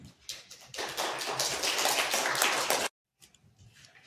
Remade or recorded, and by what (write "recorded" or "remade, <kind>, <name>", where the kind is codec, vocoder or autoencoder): recorded